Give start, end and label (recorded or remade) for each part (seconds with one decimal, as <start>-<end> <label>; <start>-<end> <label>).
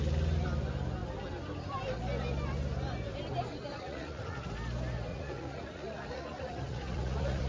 0.0-3.7 recorded; 3.7-4.5 remade; 4.5-5.1 recorded; 5.1-7.5 remade